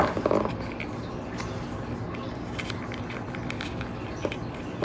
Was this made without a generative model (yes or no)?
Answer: yes